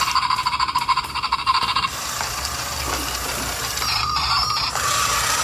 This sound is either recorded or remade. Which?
remade